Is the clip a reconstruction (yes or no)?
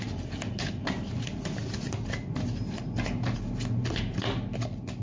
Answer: no